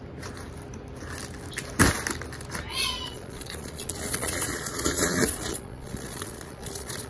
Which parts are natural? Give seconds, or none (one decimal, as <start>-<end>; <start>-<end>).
0.0-2.7